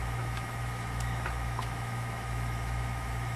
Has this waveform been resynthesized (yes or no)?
yes